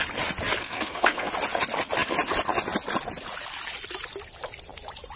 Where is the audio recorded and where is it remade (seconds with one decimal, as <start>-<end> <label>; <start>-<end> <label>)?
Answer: 0.0-0.6 recorded; 0.6-1.3 remade; 1.3-5.2 recorded